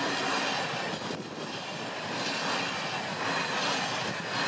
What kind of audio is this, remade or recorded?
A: recorded